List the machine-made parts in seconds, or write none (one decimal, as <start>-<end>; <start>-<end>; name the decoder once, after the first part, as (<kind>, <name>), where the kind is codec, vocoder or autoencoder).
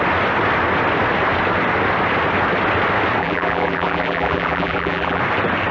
3.2-5.2 (vocoder, BigVGAN v2)